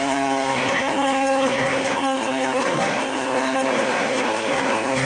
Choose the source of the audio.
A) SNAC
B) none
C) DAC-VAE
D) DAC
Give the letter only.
A